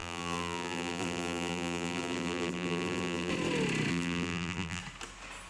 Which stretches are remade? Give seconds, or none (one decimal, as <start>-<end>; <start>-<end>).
0.0-3.3; 3.9-4.8